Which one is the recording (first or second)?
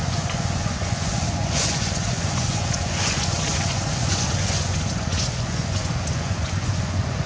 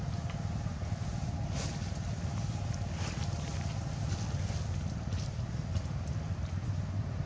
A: second